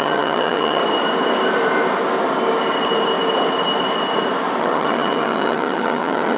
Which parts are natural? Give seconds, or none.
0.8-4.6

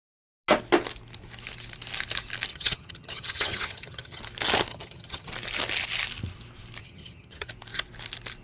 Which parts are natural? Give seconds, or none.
0.0-2.5; 4.2-4.7; 5.3-6.8; 7.5-8.4

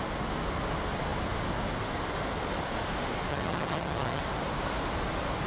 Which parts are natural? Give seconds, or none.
0.0-3.3; 4.2-5.5

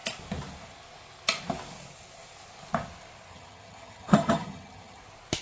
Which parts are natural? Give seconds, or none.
0.0-3.3; 5.0-5.4